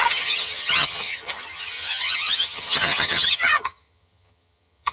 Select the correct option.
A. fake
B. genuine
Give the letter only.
A